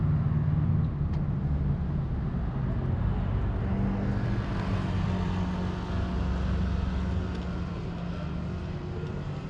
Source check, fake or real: real